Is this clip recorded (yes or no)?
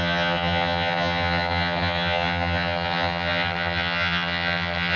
no